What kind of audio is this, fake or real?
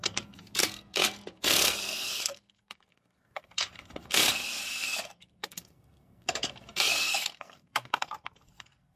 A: fake